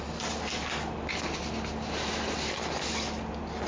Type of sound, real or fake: real